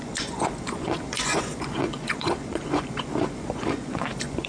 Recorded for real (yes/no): no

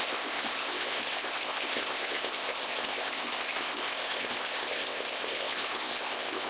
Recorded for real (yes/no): no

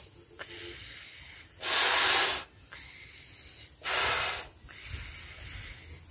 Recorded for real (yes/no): yes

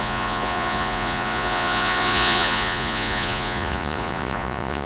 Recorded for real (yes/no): no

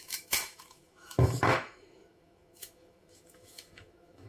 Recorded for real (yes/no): no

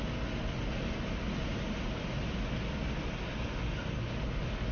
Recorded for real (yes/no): yes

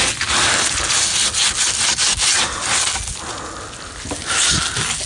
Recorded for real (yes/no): yes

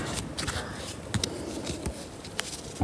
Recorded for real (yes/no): yes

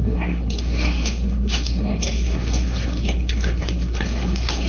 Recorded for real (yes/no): no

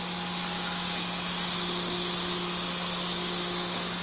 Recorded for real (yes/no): yes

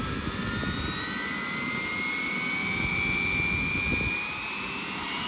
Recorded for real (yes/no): yes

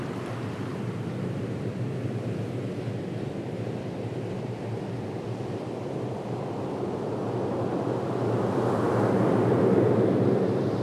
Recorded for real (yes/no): yes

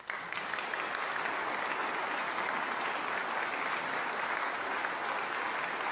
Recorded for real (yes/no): yes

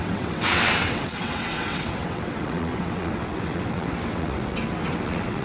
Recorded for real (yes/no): no